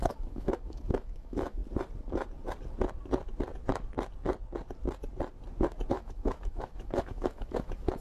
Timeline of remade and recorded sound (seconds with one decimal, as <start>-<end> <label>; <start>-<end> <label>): 0.0-1.6 remade; 1.6-5.9 recorded; 5.9-8.0 remade